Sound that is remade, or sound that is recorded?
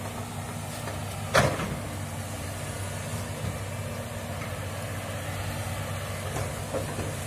recorded